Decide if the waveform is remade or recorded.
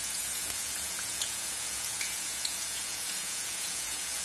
remade